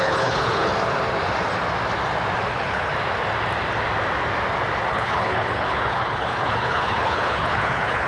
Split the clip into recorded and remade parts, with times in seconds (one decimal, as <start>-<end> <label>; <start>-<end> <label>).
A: 0.0-0.7 remade; 0.7-2.5 recorded; 2.5-2.9 remade; 2.9-4.9 recorded; 4.9-8.1 remade

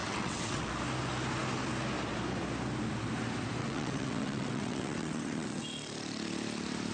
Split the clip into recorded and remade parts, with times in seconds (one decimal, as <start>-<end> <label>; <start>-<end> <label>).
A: 0.0-0.7 remade; 0.7-3.6 recorded; 3.6-5.6 remade; 5.6-6.9 recorded